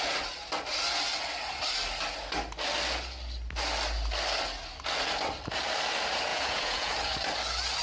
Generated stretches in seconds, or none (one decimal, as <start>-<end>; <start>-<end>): 6.3-6.9